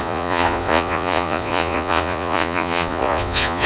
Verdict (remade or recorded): remade